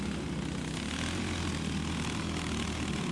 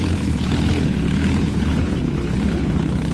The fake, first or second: second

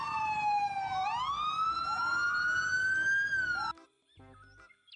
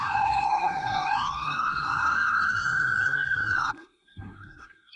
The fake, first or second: second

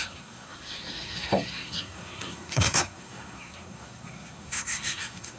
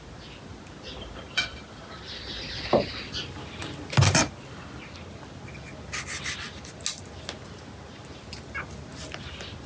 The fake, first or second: first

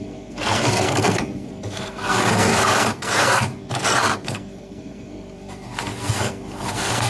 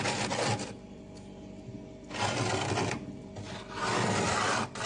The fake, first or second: first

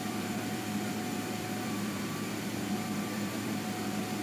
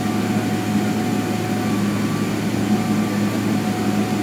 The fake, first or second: first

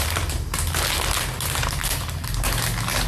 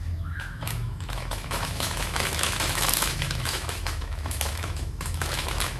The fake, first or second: second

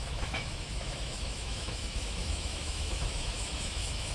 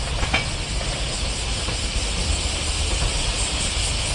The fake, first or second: first